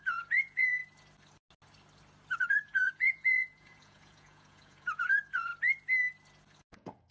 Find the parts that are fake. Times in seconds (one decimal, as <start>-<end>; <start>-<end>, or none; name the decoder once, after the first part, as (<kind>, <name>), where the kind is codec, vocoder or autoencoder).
0.0-0.8 (vocoder, Vocos); 2.4-5.5; 6.6-7.1